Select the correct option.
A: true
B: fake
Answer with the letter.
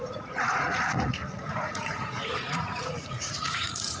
B